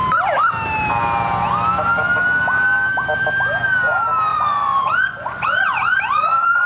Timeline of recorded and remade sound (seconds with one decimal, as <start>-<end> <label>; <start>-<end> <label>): 0.0-4.3 recorded; 4.3-6.7 remade